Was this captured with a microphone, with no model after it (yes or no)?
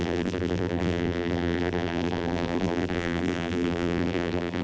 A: no